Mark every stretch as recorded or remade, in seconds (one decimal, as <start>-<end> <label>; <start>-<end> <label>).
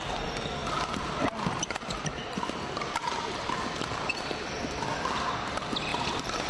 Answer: 0.0-0.6 recorded; 0.6-4.5 remade; 4.5-6.5 recorded